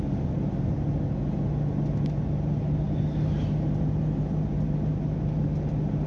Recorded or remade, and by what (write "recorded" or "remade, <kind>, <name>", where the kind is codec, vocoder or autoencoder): recorded